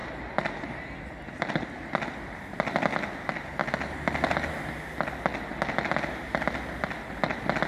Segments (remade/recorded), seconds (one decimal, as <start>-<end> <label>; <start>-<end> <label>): 0.0-7.7 recorded